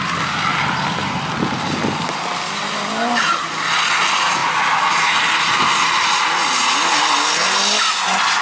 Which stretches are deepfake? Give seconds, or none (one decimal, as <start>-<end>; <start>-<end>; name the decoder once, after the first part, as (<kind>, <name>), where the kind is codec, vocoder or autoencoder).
none